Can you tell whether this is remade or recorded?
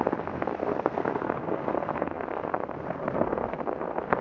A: remade